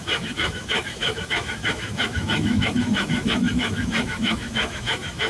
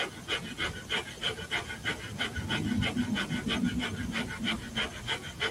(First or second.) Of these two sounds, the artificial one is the first